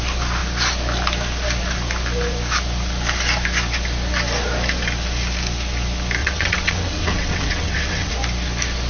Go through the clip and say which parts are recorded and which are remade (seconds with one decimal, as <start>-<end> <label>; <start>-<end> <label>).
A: 0.0-6.2 recorded; 6.2-8.1 remade; 8.1-8.9 recorded